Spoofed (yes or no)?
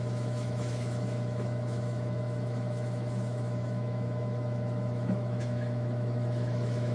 yes